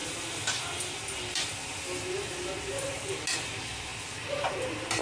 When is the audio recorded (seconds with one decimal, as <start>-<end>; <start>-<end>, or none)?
0.0-5.0